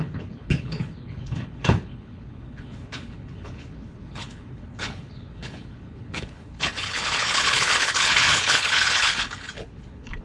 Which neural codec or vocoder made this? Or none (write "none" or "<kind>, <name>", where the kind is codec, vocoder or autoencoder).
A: codec, HILCodec